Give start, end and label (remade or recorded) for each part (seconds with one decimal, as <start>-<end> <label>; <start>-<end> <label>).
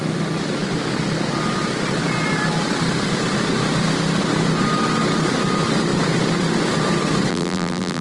0.0-7.3 recorded; 7.3-8.0 remade